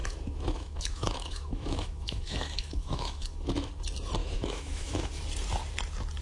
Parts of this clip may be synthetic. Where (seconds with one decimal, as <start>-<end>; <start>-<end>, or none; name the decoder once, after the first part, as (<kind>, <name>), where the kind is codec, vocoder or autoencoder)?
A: 0.0-3.7 (autoencoder, DAC-VAE); 4.2-5.1